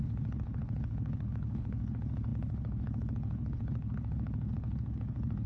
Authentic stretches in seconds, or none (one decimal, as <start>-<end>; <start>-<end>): none